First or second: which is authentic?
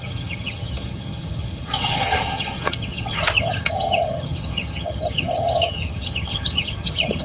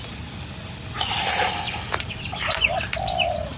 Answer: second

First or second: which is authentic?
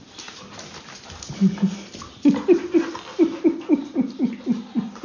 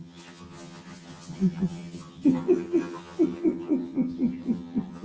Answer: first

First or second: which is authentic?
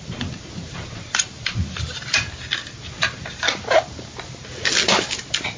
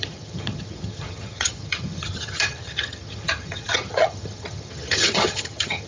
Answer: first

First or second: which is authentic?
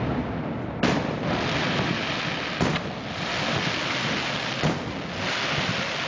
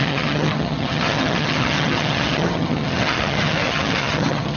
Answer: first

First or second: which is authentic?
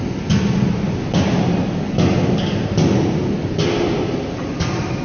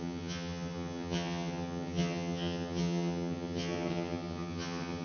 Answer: first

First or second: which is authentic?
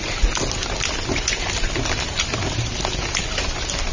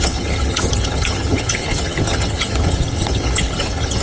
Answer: first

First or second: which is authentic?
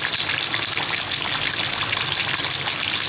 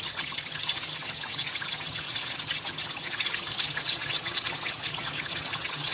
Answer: first